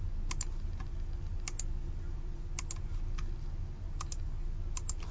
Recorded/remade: recorded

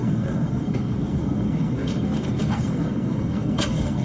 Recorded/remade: remade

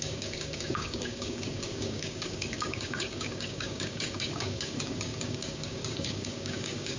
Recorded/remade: remade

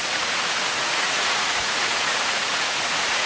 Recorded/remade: remade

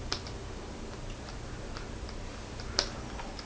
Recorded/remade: recorded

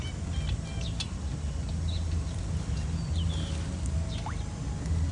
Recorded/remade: recorded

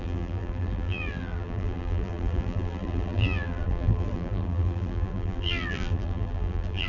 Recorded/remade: remade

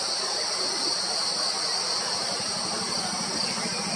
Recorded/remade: recorded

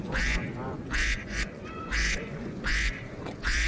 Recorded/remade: remade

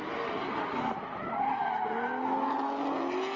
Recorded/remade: recorded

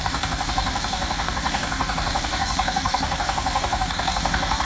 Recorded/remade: remade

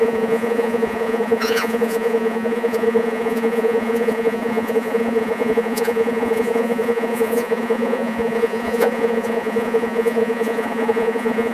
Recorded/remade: remade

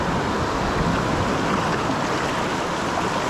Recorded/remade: recorded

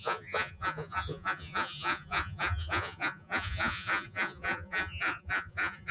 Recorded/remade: remade